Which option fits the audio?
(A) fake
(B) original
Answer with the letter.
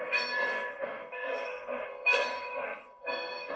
A